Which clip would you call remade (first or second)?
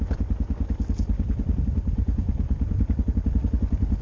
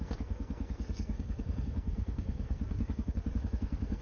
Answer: second